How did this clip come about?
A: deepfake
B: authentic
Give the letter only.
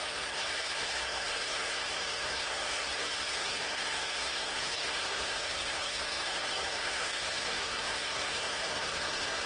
A